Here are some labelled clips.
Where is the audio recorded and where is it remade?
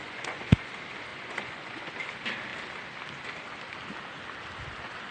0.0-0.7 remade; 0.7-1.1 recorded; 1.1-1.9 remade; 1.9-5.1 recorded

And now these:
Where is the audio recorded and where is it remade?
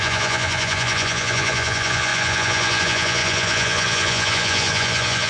0.0-5.3 remade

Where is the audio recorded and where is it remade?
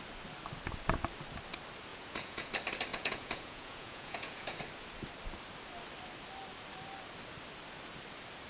0.0-1.9 recorded; 1.9-2.5 remade; 2.5-2.9 recorded; 2.9-4.6 remade; 4.6-8.5 recorded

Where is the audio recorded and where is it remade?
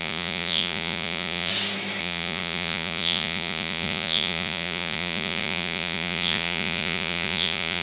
0.0-1.5 remade; 1.5-2.0 recorded; 2.0-7.8 remade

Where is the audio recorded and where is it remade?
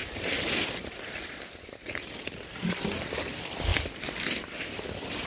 0.0-5.3 recorded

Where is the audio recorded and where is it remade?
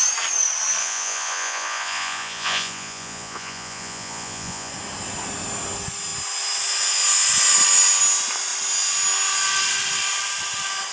0.0-0.8 recorded; 0.8-4.7 remade; 4.7-10.9 recorded